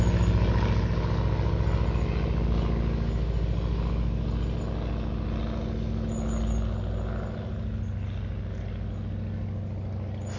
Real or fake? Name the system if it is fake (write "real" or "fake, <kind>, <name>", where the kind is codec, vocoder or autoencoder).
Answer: real